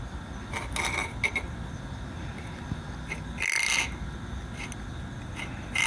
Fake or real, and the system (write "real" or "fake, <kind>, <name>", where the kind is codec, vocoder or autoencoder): real